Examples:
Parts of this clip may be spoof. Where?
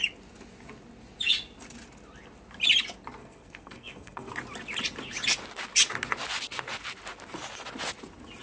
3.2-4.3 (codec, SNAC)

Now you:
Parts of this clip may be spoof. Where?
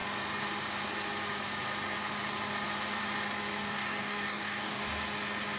3.6-4.8 (codec, DAC)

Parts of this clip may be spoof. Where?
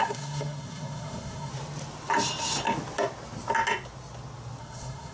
0.0-1.5 (codec, SNAC); 4.6-5.1